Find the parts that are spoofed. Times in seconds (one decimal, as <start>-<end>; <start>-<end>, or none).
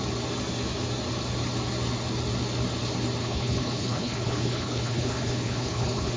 3.2-6.2